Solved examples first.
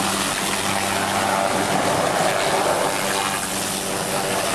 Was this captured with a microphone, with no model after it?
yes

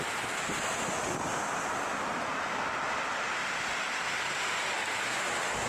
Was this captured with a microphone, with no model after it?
yes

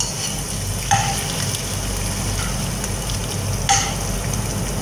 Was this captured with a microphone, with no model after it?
yes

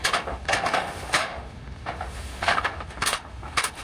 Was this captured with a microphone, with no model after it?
no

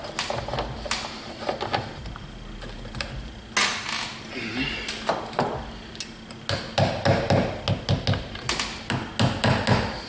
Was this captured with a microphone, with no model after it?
yes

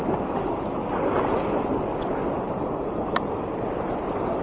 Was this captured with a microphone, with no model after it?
yes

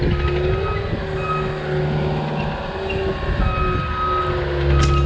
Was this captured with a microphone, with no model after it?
yes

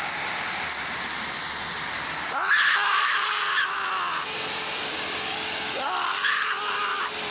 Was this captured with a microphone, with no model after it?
yes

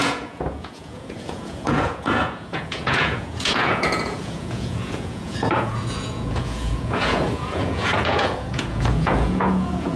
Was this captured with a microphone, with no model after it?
no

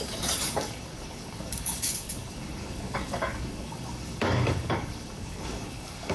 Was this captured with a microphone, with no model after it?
no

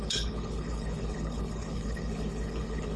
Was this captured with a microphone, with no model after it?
no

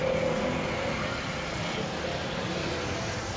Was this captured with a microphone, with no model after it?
yes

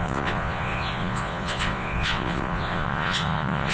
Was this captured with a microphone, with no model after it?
no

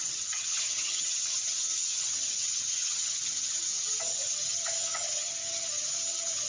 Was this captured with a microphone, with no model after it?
no